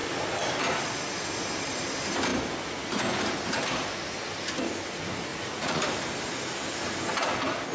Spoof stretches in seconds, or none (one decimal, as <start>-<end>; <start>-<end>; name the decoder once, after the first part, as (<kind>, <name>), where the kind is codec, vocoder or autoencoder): 5.3-5.8 (vocoder, Vocos)